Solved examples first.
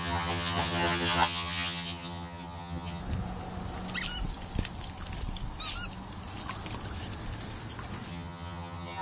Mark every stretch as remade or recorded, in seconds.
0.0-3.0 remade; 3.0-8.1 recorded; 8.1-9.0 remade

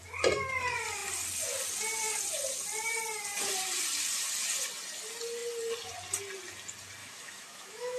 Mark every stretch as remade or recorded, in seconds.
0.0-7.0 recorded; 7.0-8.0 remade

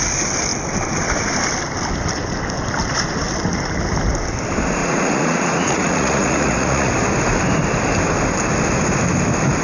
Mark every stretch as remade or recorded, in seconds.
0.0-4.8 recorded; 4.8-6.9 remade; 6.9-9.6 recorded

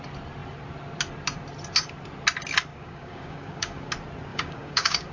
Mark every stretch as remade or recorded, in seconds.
0.0-2.7 recorded; 2.7-3.9 remade; 3.9-4.3 recorded; 4.3-5.1 remade

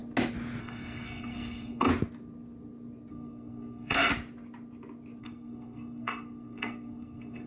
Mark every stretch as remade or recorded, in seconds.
0.0-0.6 recorded; 0.6-1.9 remade; 1.9-3.1 recorded; 3.1-4.1 remade; 4.1-5.2 recorded; 5.2-7.5 remade